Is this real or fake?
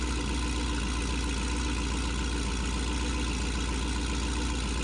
real